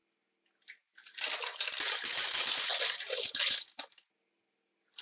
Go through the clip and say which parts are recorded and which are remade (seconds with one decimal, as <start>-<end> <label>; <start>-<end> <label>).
0.0-5.0 recorded